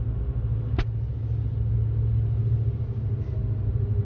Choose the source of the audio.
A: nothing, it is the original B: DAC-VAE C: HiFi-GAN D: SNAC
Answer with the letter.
A